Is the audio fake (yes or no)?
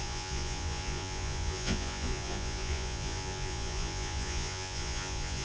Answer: yes